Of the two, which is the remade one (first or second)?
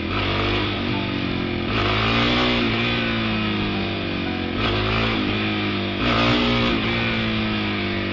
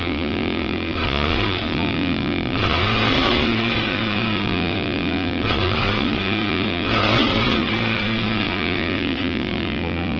second